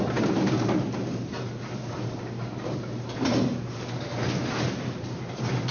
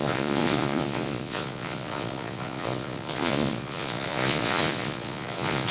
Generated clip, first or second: second